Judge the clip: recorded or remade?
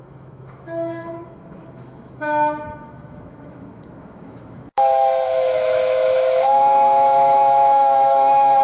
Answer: remade